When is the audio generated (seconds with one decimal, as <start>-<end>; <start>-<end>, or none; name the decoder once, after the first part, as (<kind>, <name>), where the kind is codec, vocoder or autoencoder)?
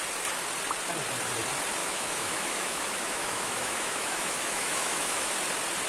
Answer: 1.8-5.3 (autoencoder, DAC-VAE)